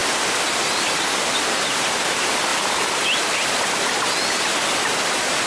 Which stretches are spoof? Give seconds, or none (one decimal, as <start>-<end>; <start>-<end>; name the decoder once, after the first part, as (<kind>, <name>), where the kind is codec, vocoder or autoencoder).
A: none